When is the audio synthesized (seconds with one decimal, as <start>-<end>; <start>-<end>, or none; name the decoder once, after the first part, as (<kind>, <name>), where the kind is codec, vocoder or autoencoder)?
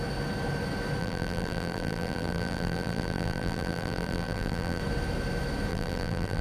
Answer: 1.0-4.8 (vocoder, BigVGAN v2); 5.7-6.4